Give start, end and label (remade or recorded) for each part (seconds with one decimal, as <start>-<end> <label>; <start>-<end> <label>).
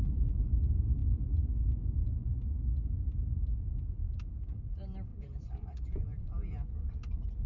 0.0-5.1 recorded; 5.1-6.3 remade; 6.3-7.5 recorded